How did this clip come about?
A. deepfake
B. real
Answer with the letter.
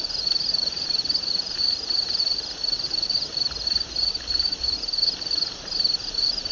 A